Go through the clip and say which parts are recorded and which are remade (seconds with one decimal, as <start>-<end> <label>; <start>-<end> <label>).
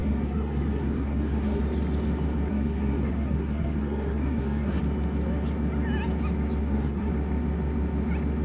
0.0-1.6 remade; 1.6-2.5 recorded; 2.5-4.8 remade; 4.8-6.6 recorded; 6.6-7.1 remade; 7.1-8.4 recorded